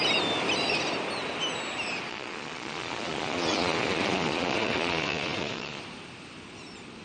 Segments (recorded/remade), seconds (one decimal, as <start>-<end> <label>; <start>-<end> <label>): 0.0-2.1 recorded; 2.1-5.8 remade; 5.8-7.0 recorded